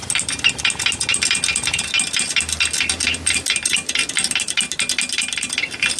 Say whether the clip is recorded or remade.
recorded